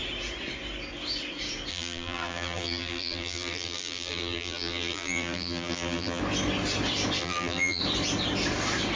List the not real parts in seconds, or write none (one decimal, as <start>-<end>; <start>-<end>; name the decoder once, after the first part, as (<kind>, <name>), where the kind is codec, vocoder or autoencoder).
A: 1.7-6.2 (vocoder, BigVGAN v2); 7.2-7.8